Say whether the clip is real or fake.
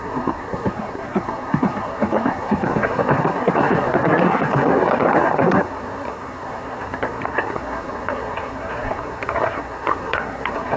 fake